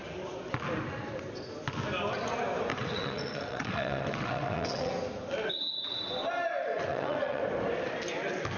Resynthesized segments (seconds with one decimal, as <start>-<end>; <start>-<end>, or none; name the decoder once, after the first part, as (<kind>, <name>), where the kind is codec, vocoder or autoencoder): 2.7-4.9 (vocoder, WaveNeXt); 6.9-7.4